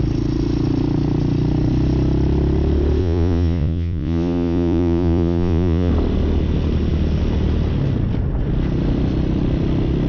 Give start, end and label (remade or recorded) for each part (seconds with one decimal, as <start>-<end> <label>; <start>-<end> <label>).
0.0-3.0 recorded; 3.0-5.9 remade; 5.9-10.1 recorded